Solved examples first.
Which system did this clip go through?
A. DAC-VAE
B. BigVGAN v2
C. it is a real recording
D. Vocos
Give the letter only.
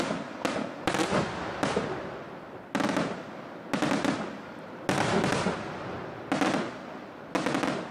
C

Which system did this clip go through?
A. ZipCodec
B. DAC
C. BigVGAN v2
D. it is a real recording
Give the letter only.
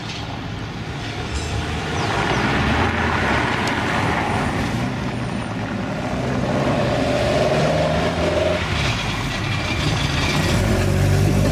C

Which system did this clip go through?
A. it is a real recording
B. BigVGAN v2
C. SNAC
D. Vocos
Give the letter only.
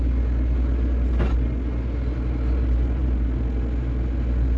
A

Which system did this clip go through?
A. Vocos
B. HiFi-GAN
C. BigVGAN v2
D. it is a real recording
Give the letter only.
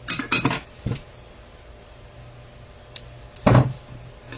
D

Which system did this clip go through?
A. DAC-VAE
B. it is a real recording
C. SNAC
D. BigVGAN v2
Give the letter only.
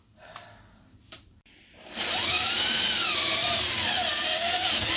B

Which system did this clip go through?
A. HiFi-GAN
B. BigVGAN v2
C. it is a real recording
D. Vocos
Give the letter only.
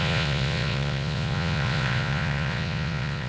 D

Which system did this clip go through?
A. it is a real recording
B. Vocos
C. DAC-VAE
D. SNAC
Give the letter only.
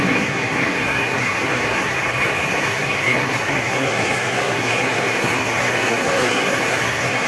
D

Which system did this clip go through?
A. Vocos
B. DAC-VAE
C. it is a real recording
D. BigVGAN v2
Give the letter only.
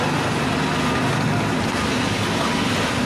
C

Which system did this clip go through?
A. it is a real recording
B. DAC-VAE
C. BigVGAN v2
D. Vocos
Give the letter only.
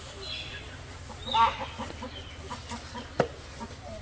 A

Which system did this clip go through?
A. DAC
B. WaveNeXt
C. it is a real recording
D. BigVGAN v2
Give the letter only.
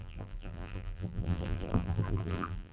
D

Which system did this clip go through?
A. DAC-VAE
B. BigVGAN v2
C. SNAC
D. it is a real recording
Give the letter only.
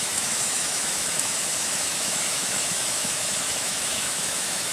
A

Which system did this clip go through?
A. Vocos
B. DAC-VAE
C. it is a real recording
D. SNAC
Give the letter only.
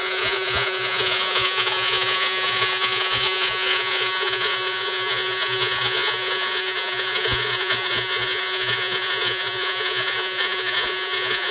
A